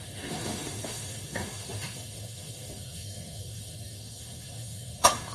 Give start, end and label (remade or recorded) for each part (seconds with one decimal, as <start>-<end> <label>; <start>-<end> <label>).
0.0-5.3 remade